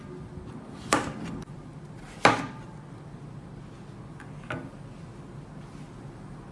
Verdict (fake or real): real